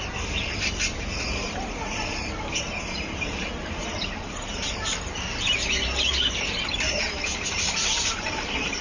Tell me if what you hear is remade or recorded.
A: remade